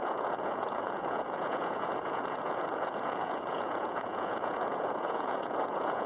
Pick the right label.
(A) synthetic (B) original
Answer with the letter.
A